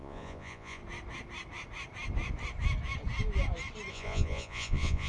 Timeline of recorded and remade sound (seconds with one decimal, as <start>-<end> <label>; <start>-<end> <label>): 0.0-0.8 remade; 0.8-3.9 recorded; 3.9-5.1 remade